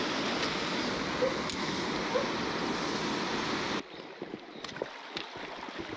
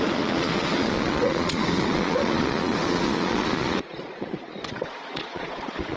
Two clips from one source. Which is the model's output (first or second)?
second